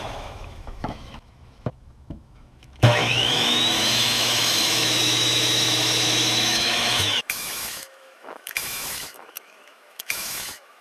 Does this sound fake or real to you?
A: fake